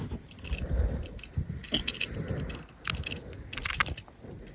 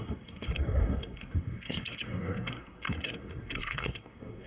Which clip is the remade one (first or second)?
second